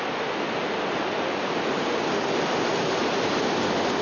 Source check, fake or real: real